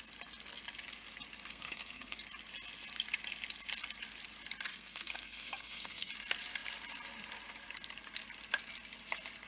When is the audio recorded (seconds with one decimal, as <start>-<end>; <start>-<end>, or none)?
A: 0.0-1.5; 2.2-4.7; 6.1-9.5